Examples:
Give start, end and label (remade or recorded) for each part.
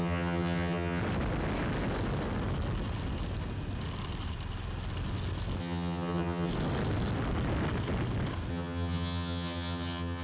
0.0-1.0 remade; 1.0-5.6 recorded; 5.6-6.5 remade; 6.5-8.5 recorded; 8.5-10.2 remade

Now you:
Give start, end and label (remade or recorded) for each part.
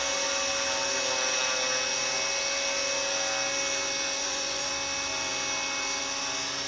0.0-4.2 recorded; 4.2-4.7 remade; 4.7-6.7 recorded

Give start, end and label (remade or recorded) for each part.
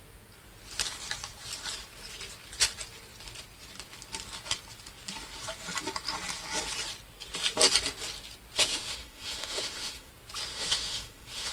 0.0-8.7 recorded; 8.7-10.1 remade; 10.1-10.5 recorded; 10.5-11.5 remade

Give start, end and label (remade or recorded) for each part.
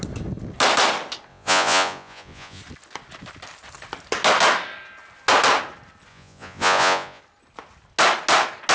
0.0-1.3 recorded; 1.3-2.6 remade; 2.6-6.1 recorded; 6.1-7.2 remade; 7.2-8.7 recorded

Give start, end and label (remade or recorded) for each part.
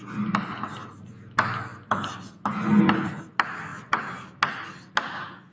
0.0-5.5 recorded